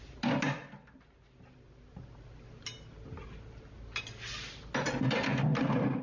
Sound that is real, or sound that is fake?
real